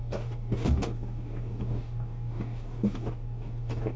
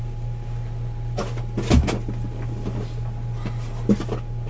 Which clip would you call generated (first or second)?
first